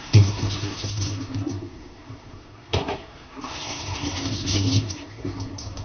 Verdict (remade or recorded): remade